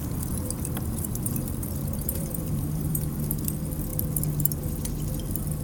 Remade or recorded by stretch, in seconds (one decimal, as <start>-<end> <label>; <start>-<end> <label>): 0.0-3.4 remade; 3.4-5.6 recorded